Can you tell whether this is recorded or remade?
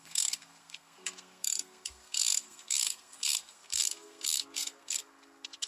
remade